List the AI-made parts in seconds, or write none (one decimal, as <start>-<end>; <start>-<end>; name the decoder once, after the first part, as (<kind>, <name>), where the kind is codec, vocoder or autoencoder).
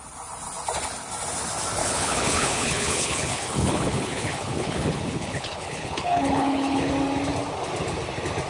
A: 1.8-6.9 (codec, HILCodec)